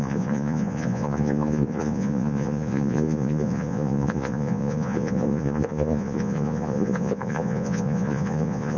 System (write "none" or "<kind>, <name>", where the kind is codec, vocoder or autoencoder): vocoder, Vocos